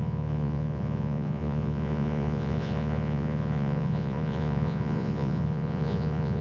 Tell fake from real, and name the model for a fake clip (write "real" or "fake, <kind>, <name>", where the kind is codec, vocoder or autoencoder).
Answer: fake, vocoder, Vocos